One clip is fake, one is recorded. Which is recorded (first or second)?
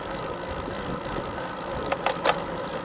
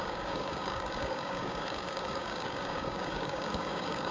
first